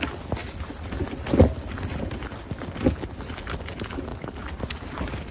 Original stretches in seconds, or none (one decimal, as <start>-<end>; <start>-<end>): 0.0-5.3